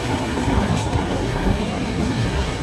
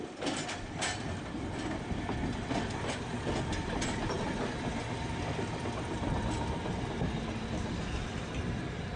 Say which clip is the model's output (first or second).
first